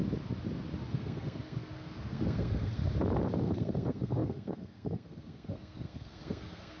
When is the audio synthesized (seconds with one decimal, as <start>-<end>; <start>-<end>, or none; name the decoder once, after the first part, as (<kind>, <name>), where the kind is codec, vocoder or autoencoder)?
0.9-2.8 (codec, SNAC); 3.4-6.8